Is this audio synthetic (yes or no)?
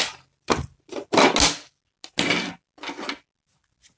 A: no